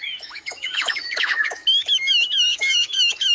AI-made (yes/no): yes